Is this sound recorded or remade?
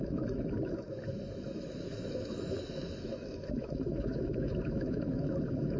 remade